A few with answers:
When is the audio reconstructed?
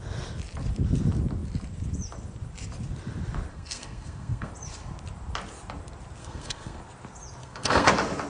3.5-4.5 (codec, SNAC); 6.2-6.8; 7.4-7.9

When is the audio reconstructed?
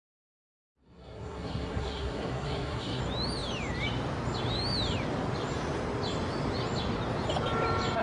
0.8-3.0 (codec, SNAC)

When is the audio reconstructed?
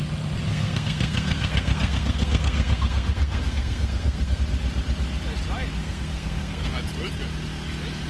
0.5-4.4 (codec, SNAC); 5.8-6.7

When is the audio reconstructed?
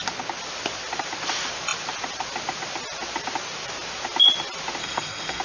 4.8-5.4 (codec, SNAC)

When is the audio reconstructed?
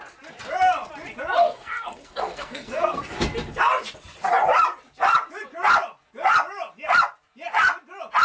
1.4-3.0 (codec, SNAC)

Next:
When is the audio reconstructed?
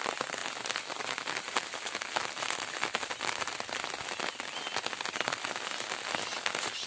none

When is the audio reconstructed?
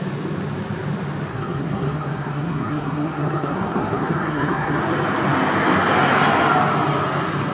1.3-4.8 (codec, SNAC)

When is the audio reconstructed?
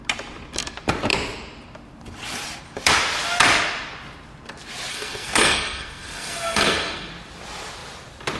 4.9-7.1 (codec, SNAC)